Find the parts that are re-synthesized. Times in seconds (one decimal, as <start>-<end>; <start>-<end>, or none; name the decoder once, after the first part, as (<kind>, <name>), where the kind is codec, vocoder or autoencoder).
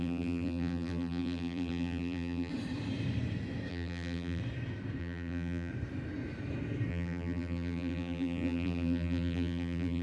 0.0-2.5 (vocoder, BigVGAN v2); 3.7-4.4; 5.0-5.7; 6.9-10.0